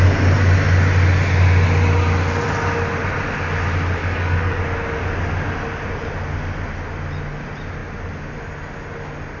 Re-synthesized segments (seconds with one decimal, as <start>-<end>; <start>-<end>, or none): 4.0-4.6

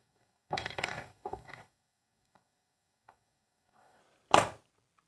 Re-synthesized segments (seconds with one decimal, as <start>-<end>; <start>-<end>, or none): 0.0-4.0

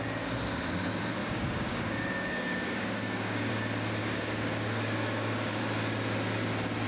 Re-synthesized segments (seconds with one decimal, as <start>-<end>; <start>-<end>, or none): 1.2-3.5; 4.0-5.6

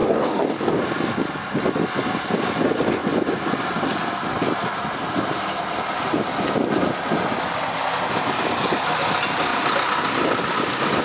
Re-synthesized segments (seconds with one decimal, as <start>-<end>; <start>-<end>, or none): 0.0-0.8

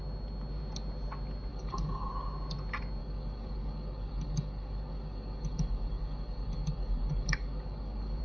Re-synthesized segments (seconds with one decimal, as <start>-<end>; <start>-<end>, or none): 1.5-2.1; 3.0-8.2

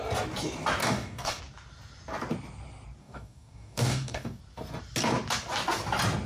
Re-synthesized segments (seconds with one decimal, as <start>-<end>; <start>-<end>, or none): 0.8-1.4; 3.0-4.4